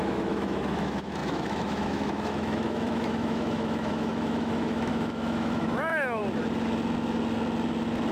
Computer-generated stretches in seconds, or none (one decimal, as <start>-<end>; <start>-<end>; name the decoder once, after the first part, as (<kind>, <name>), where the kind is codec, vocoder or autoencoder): 0.0-6.2 (autoencoder, DAC-VAE)